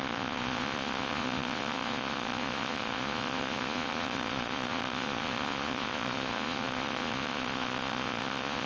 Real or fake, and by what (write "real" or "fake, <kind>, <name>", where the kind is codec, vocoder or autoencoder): fake, vocoder, Vocos